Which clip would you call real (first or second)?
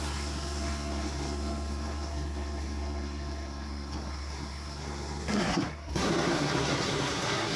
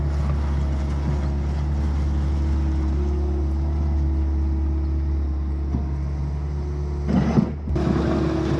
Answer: second